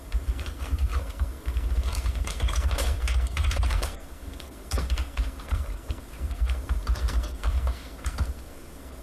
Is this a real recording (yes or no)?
no